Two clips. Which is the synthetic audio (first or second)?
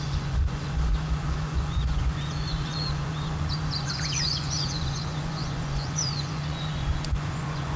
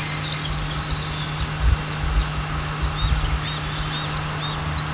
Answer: first